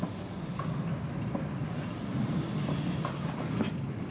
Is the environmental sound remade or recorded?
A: recorded